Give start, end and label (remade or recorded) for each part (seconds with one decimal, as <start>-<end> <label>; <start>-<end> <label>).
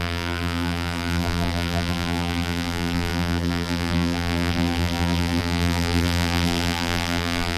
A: 0.0-7.6 remade